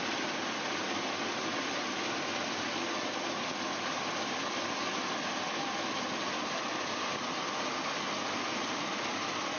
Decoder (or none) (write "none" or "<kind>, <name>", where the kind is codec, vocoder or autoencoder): none